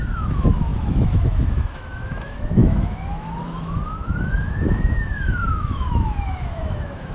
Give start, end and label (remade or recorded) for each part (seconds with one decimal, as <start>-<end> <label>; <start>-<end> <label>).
0.0-7.1 remade